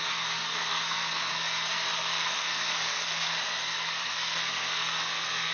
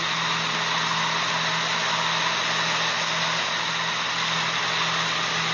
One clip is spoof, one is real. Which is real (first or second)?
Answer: second